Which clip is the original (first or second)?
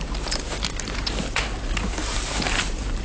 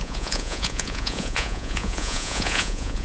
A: first